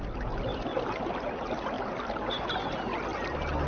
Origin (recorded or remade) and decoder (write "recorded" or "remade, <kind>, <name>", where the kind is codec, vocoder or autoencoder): recorded